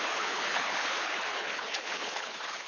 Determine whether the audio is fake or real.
fake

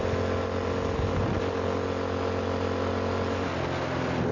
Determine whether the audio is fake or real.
real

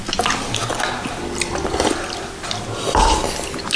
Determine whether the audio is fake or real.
real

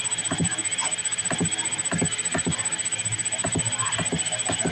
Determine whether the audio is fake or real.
real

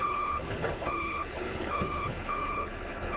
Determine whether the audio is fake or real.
fake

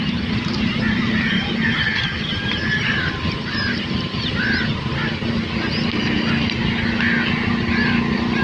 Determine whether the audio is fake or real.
real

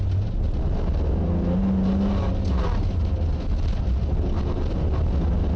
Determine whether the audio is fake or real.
real